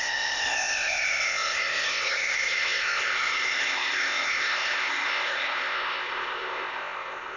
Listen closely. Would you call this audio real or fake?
fake